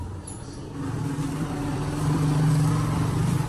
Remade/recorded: recorded